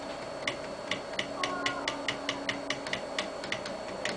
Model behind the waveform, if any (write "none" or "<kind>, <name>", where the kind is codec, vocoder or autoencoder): none